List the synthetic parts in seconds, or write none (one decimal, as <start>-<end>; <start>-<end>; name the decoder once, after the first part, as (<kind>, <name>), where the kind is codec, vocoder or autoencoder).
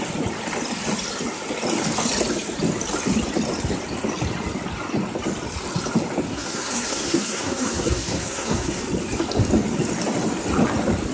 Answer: 6.3-8.8 (codec, SNAC)